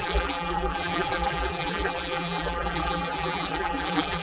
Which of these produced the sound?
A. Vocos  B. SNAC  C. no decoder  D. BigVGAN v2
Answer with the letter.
D